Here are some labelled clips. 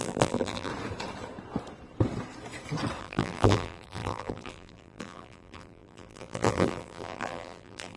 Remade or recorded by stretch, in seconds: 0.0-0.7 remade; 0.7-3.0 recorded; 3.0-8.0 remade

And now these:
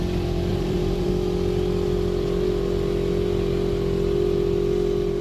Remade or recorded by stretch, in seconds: 0.0-0.5 recorded; 0.5-1.1 remade; 1.1-5.2 recorded

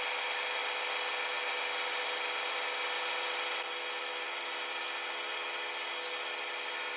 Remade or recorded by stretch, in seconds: 0.0-7.0 recorded